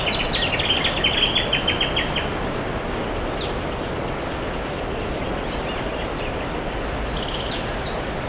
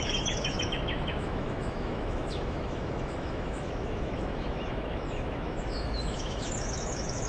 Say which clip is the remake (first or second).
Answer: second